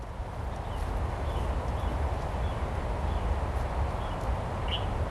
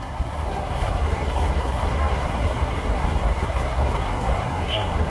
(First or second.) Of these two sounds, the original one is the first